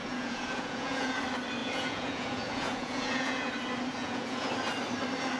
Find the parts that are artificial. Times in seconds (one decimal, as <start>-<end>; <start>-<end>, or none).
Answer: 0.0-1.2; 1.6-3.5; 4.0-4.5